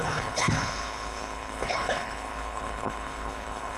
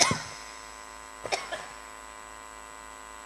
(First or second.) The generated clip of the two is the first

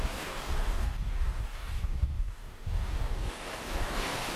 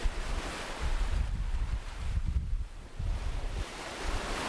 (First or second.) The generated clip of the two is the first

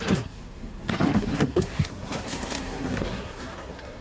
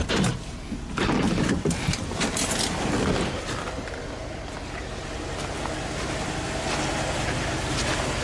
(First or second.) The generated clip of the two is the first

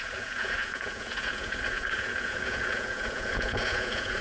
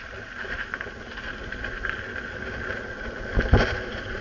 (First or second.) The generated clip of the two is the first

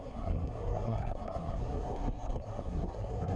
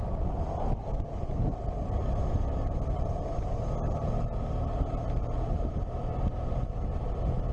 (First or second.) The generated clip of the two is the first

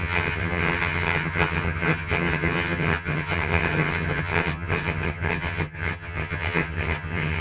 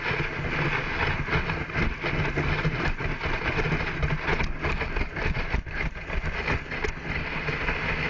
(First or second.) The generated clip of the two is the first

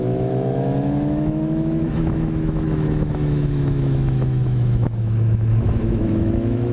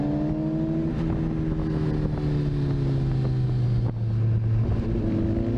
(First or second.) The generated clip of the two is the first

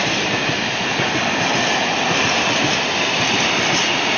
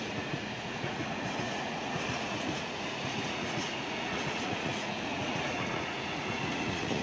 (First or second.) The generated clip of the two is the second